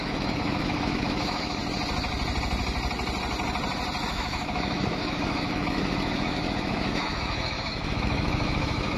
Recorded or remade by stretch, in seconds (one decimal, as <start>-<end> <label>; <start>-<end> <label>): 0.0-1.6 remade; 1.6-4.1 recorded; 4.1-9.0 remade